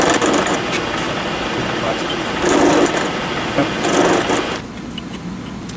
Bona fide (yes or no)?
yes